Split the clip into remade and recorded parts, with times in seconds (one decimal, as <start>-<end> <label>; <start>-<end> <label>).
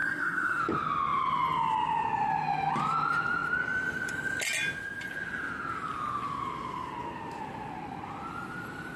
0.0-0.6 remade; 0.6-9.0 recorded